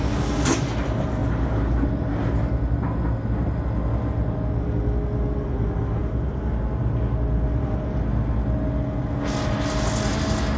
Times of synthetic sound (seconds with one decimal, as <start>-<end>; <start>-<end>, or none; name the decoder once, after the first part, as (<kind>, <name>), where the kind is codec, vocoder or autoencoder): none